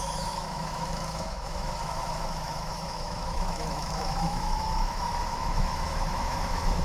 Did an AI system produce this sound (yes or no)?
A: yes